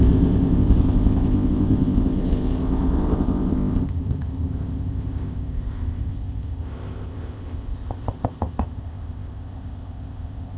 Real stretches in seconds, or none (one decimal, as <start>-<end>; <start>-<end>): none